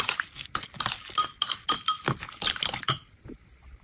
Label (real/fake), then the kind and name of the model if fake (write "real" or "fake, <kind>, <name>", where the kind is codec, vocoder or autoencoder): real